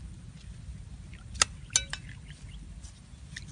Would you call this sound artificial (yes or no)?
no